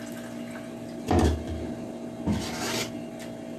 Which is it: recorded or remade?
recorded